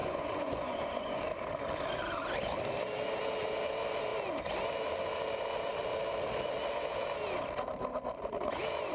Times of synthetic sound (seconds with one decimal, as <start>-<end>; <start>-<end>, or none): 0.0-1.2